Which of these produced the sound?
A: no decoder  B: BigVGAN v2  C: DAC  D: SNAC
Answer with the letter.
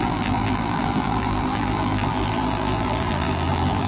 B